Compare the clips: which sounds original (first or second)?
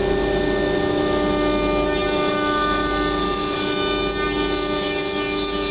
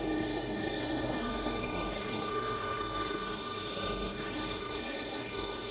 first